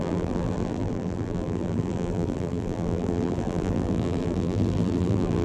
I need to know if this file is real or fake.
fake